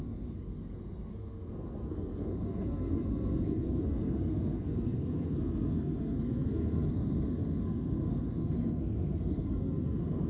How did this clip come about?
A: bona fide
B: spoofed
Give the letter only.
B